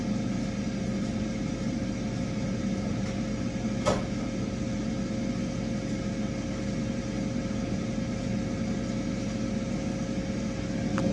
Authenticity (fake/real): real